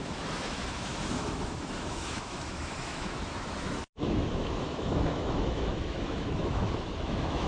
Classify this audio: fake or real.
fake